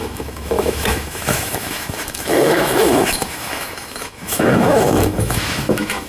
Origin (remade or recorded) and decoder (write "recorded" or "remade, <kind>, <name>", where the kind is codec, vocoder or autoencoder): remade, autoencoder, DAC-VAE